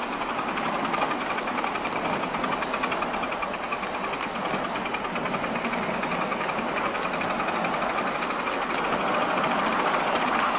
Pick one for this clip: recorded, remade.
recorded